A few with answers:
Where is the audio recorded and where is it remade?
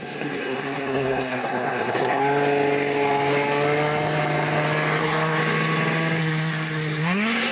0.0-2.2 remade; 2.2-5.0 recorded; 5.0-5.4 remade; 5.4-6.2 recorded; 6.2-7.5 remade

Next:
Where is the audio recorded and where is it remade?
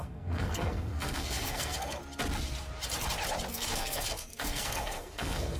0.0-2.0 remade; 2.0-3.5 recorded; 3.5-5.6 remade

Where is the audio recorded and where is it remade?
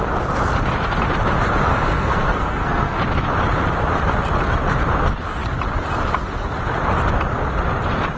0.0-1.7 recorded; 1.7-3.0 remade; 3.0-8.2 recorded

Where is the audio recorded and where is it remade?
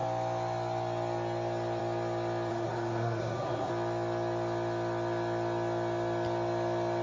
0.0-2.5 recorded; 2.5-3.7 remade; 3.7-7.0 recorded